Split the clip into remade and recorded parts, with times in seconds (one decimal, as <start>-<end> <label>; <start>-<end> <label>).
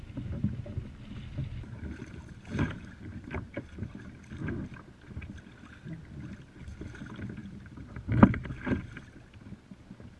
0.0-1.4 recorded; 1.4-4.2 remade; 4.2-7.4 recorded; 7.4-8.9 remade; 8.9-10.2 recorded